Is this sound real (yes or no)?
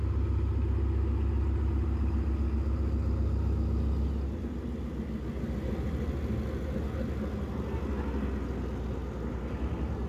yes